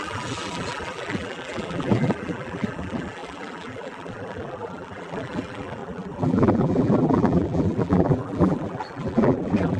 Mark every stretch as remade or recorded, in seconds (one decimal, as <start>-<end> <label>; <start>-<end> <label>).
0.0-9.8 remade